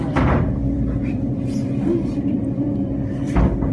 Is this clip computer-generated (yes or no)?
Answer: yes